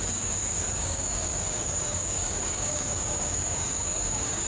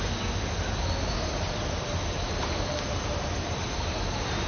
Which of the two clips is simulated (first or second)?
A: first